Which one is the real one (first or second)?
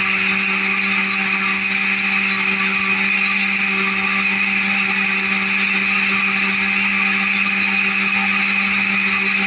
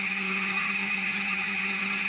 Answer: first